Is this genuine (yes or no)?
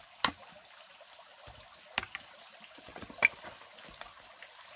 yes